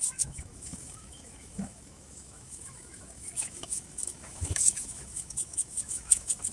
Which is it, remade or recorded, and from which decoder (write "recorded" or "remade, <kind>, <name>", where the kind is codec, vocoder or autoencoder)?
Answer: remade, autoencoder, DAC-VAE